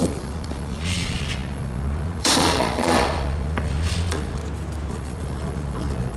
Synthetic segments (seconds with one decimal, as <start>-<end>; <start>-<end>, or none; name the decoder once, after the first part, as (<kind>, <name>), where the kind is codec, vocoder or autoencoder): 0.0-4.4 (vocoder, Vocos); 4.9-6.2